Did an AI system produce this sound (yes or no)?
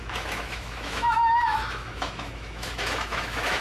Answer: yes